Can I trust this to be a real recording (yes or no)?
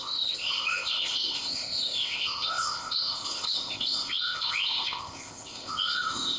no